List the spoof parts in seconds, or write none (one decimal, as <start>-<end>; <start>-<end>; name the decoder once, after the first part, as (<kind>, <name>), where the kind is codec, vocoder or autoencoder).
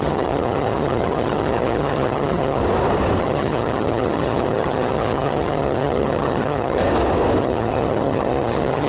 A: 0.0-2.6 (vocoder, HiFi-GAN); 3.2-6.8; 7.4-8.9